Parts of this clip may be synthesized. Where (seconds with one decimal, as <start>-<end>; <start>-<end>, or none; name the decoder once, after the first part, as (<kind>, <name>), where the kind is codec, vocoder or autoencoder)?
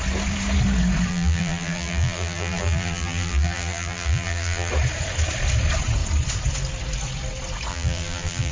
1.1-4.7 (vocoder, BigVGAN v2); 7.7-8.5